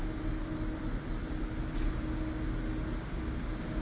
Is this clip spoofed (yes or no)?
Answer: no